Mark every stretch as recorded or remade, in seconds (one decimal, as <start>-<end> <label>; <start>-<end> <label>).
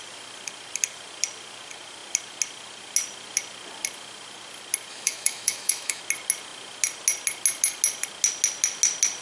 0.0-4.9 recorded; 4.9-6.0 remade; 6.0-9.2 recorded